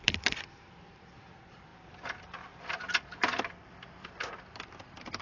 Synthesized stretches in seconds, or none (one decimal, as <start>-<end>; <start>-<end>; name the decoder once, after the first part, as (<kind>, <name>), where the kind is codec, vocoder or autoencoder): 0.0-5.2 (vocoder, BigVGAN v2)